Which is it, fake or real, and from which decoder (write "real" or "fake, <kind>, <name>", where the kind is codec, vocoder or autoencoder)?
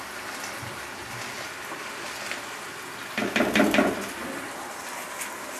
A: real